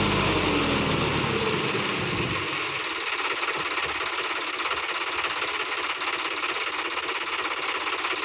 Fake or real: real